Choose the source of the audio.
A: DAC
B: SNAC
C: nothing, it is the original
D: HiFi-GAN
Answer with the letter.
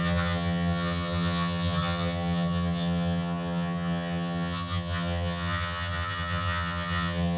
D